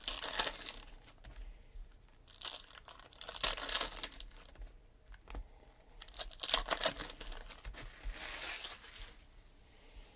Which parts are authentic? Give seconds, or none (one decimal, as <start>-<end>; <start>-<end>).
0.0-10.2